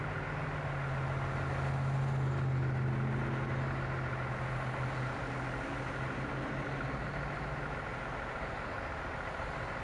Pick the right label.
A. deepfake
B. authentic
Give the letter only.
B